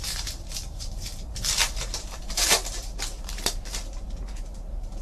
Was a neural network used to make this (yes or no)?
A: yes